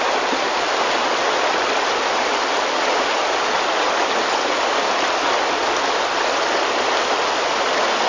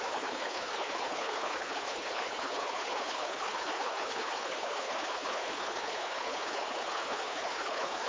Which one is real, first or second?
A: first